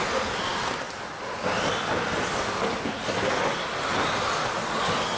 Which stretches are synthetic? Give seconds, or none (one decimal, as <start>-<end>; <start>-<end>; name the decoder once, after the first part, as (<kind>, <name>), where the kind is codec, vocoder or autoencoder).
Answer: none